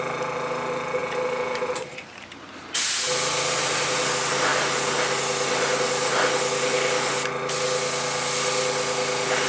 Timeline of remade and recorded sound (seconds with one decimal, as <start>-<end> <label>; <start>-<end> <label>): 0.0-9.5 recorded